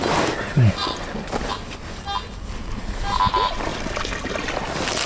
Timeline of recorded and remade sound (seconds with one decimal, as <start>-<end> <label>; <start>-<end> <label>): 0.0-5.1 recorded